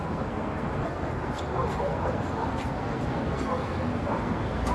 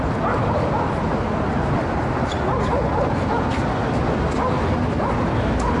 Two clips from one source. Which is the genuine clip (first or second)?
second